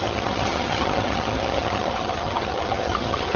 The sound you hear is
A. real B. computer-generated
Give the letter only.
B